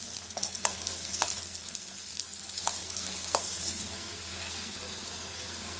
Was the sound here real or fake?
fake